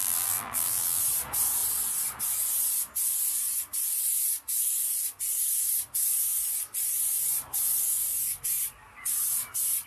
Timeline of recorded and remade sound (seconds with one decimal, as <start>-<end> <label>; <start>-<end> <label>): 0.0-1.0 remade; 1.0-9.9 recorded